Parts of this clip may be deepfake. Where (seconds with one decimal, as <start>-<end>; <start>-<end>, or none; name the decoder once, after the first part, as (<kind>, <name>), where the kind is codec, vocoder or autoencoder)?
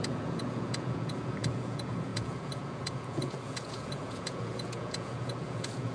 0.0-5.9 (vocoder, Vocos)